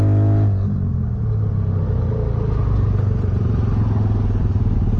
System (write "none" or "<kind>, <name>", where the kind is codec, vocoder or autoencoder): none